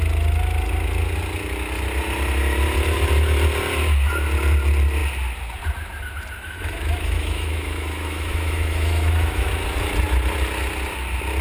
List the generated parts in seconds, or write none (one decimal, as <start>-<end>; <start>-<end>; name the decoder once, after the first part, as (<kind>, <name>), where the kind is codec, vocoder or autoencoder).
6.4-9.5 (autoencoder, DAC-VAE)